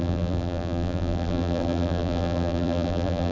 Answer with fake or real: fake